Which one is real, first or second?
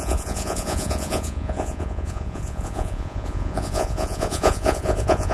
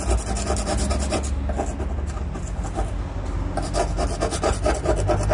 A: second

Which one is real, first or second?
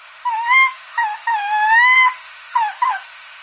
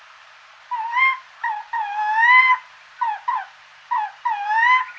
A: second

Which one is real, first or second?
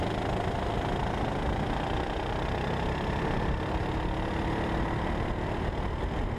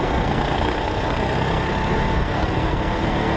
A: first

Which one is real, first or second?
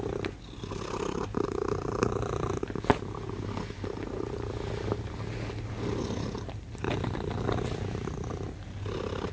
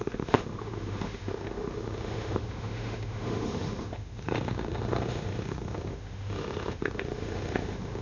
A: first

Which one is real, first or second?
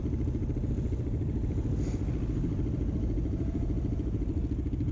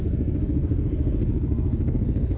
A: first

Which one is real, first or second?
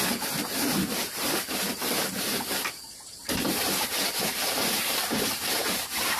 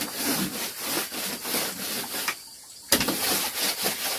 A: second